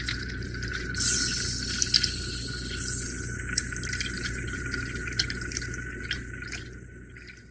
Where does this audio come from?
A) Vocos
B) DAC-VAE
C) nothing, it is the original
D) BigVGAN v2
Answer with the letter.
C